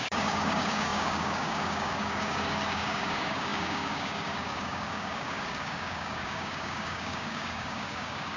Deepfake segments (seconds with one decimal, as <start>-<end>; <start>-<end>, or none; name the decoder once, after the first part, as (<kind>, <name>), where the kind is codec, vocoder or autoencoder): 0.0-8.4 (codec, DAC)